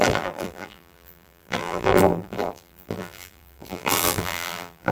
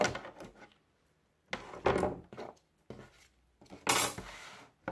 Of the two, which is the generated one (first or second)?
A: first